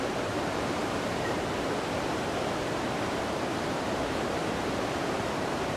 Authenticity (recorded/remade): remade